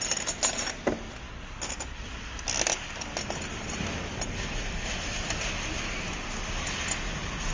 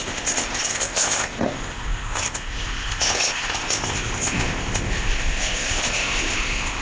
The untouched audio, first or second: first